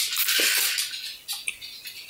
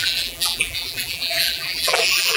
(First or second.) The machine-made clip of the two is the second